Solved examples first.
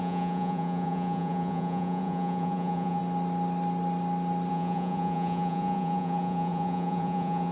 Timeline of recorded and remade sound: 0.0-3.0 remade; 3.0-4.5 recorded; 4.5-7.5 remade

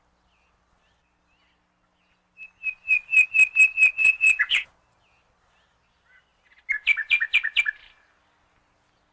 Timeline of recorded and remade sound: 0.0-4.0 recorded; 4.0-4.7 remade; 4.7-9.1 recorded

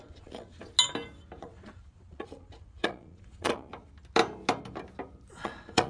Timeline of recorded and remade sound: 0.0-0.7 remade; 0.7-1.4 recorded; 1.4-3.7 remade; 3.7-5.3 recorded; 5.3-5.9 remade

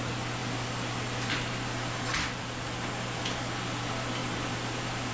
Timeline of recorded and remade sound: 0.0-5.1 recorded

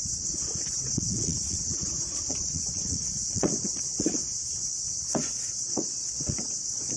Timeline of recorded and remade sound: 0.0-4.2 remade; 4.2-4.9 recorded; 4.9-7.0 remade

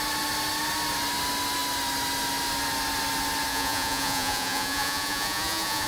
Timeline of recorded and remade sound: 0.0-3.5 recorded; 3.5-5.9 remade

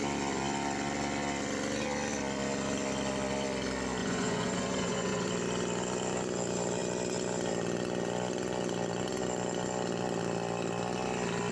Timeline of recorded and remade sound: 0.0-4.0 recorded; 4.0-5.3 remade; 5.3-11.5 recorded